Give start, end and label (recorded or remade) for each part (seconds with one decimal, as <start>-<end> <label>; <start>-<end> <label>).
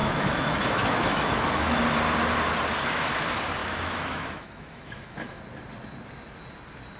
0.0-1.8 remade; 1.8-3.6 recorded; 3.6-5.4 remade; 5.4-7.0 recorded